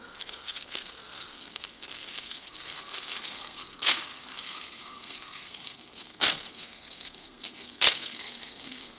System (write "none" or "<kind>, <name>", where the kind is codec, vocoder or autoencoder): codec, SNAC